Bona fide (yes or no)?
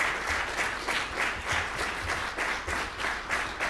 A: yes